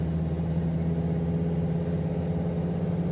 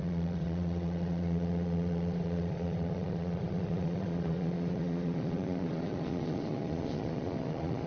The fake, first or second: second